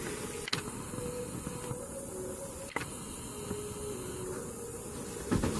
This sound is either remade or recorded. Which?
recorded